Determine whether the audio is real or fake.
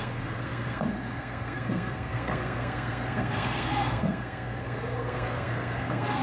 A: fake